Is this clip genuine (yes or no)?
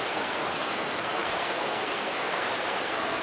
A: no